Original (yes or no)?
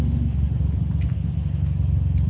yes